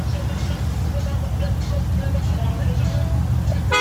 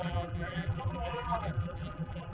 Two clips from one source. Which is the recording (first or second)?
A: first